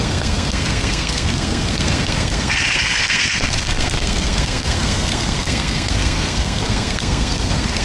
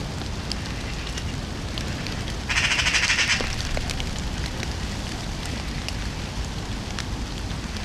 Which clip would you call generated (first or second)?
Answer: first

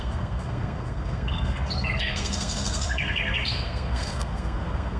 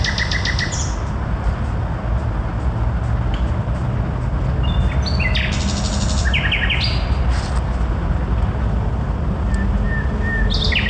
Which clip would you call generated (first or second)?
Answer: first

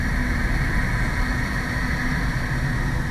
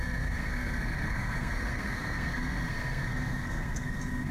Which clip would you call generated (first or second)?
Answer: second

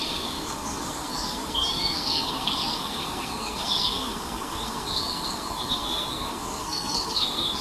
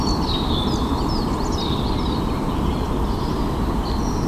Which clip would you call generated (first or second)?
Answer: first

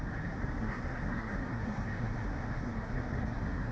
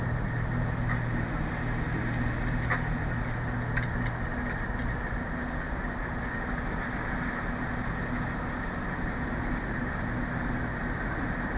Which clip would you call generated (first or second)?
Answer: first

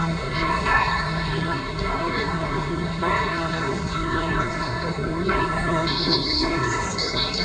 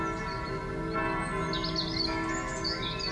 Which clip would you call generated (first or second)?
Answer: first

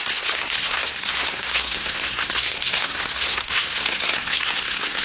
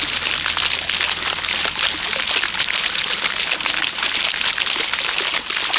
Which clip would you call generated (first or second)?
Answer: first